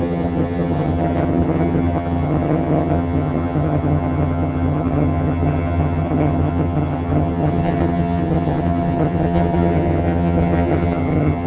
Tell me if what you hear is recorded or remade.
remade